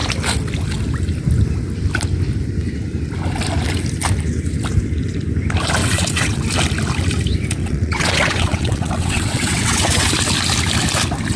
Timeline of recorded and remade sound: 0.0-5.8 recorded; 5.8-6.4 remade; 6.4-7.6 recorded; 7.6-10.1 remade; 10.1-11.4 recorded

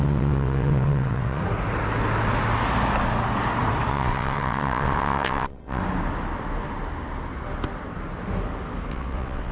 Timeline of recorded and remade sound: 0.0-1.4 remade; 1.4-3.9 recorded; 3.9-5.8 remade; 5.8-8.9 recorded; 8.9-9.5 remade

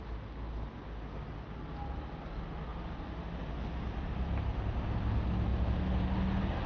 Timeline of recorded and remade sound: 0.0-6.7 recorded